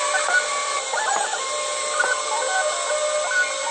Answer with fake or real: real